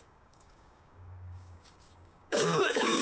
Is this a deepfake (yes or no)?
yes